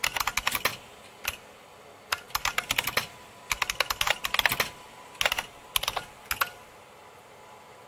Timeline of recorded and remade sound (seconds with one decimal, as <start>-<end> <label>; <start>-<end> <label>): 0.0-7.9 recorded